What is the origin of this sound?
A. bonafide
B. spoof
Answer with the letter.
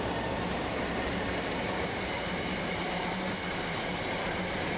B